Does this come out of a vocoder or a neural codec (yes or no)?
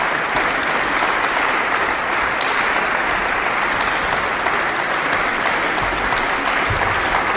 no